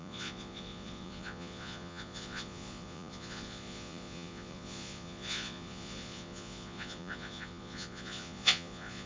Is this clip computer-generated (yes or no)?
yes